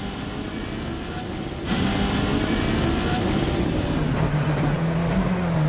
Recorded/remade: recorded